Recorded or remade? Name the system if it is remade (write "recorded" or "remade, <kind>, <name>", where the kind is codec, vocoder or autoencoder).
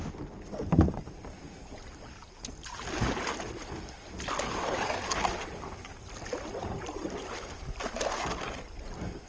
recorded